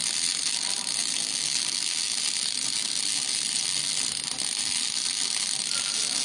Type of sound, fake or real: real